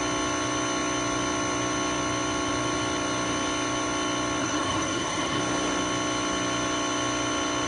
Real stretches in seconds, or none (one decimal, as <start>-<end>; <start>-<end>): 0.0-4.4; 5.4-7.7